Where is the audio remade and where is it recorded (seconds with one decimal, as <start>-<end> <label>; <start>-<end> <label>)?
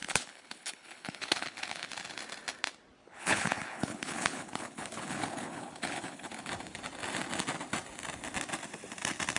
0.0-1.9 remade; 1.9-3.0 recorded; 3.0-6.5 remade; 6.5-9.4 recorded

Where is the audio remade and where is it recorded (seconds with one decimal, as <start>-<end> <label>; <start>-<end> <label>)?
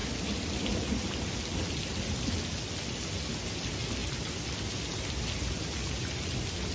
0.0-6.7 recorded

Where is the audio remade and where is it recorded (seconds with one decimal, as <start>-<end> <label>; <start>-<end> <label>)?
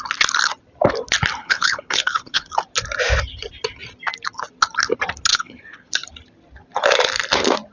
0.0-1.4 recorded; 1.4-2.5 remade; 2.5-5.3 recorded; 5.3-5.9 remade; 5.9-7.7 recorded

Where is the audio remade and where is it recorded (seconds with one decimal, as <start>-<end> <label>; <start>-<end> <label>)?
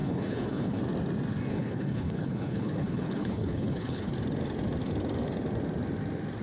0.0-0.8 remade; 0.8-1.5 recorded; 1.5-4.1 remade; 4.1-6.4 recorded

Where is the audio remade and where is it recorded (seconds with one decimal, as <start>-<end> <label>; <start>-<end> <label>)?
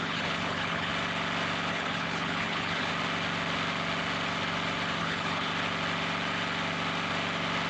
0.0-0.9 remade; 0.9-1.7 recorded; 1.7-2.9 remade; 2.9-5.0 recorded; 5.0-5.5 remade; 5.5-7.7 recorded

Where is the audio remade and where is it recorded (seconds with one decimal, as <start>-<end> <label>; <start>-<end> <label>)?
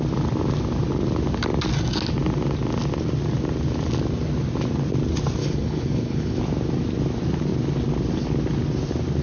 0.0-5.4 recorded; 5.4-6.4 remade; 6.4-9.2 recorded